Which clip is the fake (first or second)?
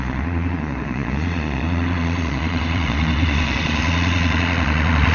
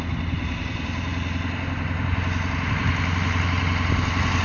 first